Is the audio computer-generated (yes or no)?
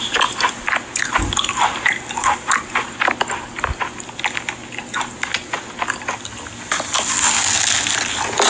no